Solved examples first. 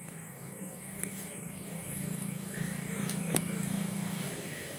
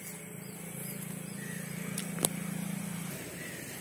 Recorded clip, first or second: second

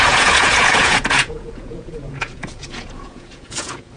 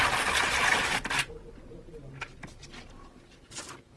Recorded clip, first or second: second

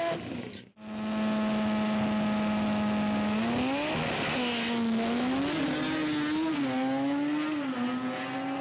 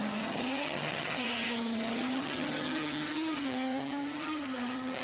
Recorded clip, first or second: first